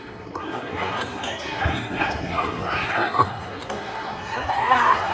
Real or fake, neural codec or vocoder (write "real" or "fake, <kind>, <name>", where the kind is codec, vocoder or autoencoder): fake, codec, SNAC